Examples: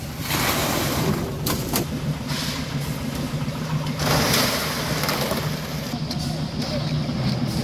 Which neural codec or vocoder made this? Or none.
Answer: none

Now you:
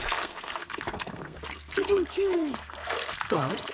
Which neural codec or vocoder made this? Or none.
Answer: codec, SNAC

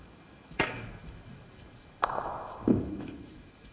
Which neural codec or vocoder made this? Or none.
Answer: autoencoder, DAC-VAE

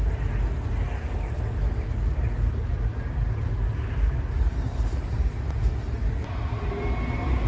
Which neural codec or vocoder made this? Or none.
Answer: none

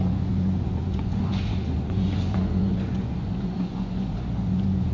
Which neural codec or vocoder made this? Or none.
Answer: vocoder, Vocos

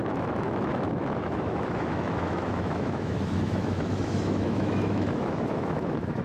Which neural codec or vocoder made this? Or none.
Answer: autoencoder, DAC-VAE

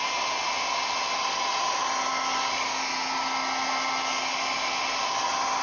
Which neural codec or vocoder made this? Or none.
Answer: none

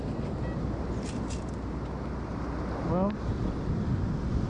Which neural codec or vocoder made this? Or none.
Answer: none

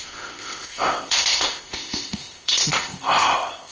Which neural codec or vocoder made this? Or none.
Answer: codec, ZipCodec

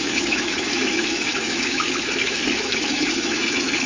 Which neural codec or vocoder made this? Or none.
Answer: autoencoder, DAC-VAE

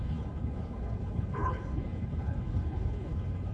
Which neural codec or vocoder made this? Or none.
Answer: codec, HILCodec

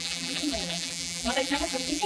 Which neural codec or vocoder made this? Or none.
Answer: vocoder, BigVGAN v2